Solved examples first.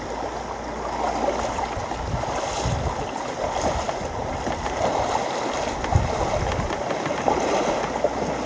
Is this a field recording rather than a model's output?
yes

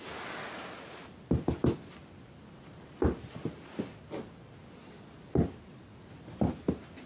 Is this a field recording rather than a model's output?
yes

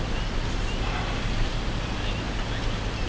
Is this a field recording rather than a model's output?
yes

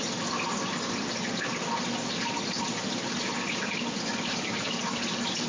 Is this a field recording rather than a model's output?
yes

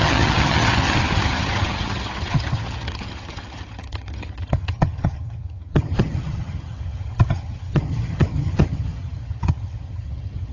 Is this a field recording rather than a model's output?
no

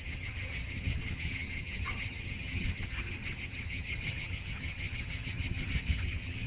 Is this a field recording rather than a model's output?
no